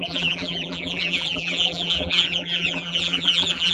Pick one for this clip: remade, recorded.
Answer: remade